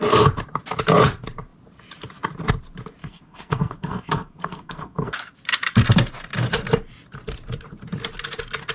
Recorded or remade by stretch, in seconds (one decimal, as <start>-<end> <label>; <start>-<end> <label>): 0.0-3.0 recorded; 3.0-5.3 remade; 5.3-8.7 recorded